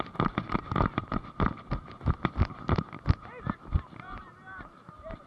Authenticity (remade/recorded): recorded